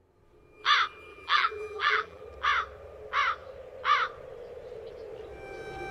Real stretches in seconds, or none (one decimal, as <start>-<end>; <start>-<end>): 0.0-1.1; 2.2-5.9